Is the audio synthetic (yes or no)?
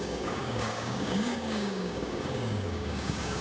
yes